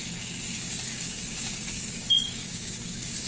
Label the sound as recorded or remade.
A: remade